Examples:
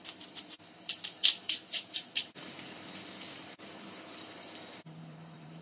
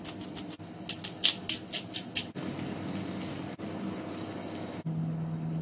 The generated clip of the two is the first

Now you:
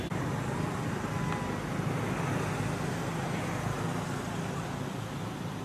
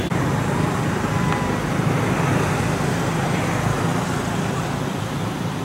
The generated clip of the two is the second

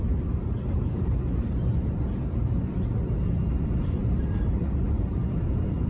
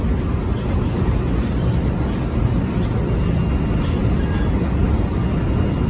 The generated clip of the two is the first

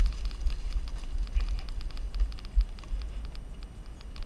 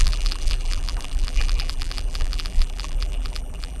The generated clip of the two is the second